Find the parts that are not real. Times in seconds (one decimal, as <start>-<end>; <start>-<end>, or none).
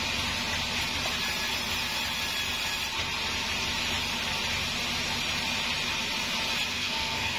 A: 6.7-7.4